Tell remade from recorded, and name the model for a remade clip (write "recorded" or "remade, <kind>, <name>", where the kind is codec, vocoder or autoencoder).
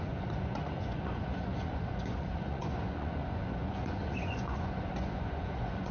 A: remade, vocoder, Vocos